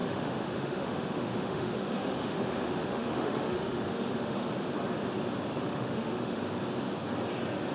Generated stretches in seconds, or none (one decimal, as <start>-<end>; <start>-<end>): 0.0-4.5; 5.5-6.4